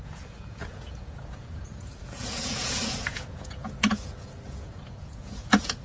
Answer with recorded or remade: remade